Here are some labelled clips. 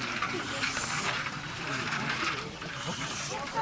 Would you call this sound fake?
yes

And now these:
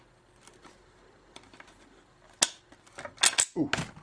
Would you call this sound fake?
no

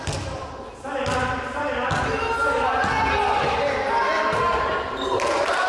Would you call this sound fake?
no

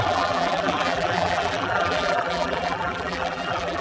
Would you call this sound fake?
yes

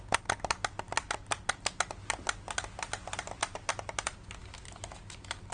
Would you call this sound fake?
no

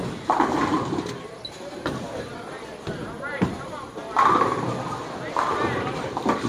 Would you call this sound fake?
no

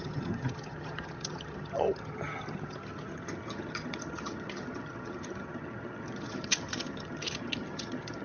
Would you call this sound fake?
yes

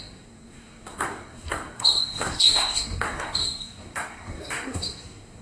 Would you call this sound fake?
yes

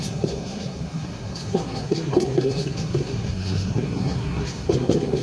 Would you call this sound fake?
yes